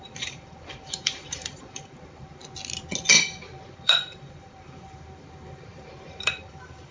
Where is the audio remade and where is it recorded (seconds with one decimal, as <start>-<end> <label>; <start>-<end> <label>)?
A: 0.0-2.4 remade; 2.4-3.1 recorded; 3.1-6.9 remade